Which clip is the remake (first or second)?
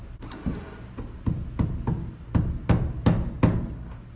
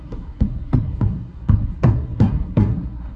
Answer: second